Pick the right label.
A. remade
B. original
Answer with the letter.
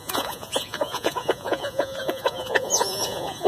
A